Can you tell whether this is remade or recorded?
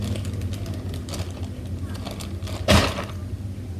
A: recorded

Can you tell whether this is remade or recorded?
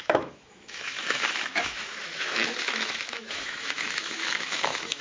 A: remade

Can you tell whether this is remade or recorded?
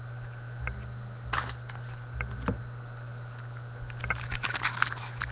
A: recorded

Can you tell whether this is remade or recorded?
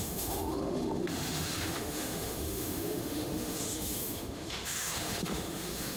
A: remade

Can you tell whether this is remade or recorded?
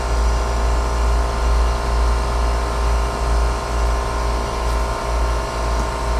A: recorded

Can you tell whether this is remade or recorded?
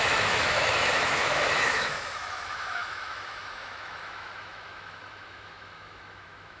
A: remade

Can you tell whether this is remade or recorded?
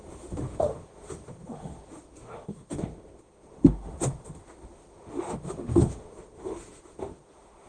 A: remade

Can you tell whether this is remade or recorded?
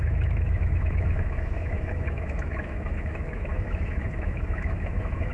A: remade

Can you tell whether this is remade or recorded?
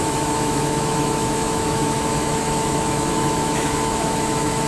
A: remade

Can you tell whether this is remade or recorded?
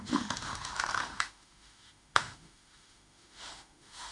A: remade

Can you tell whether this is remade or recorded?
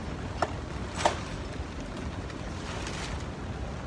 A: recorded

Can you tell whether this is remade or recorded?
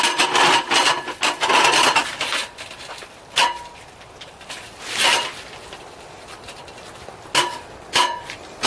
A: recorded